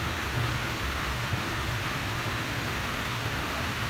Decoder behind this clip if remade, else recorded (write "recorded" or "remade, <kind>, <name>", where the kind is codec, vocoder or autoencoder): remade, autoencoder, DAC-VAE